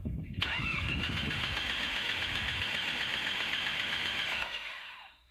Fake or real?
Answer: fake